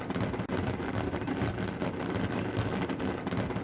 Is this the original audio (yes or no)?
yes